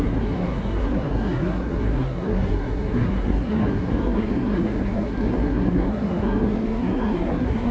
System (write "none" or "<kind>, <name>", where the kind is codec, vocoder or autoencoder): codec, SNAC